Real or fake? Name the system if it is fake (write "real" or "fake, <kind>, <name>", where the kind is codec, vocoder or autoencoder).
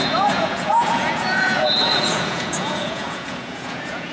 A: fake, vocoder, Vocos